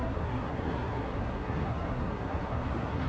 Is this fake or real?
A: fake